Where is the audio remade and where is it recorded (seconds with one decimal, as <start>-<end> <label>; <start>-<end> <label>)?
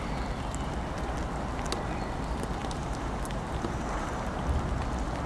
0.0-2.6 recorded; 2.6-4.4 remade; 4.4-5.3 recorded